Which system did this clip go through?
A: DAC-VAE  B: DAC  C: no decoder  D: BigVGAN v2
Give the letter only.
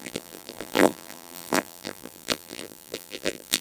D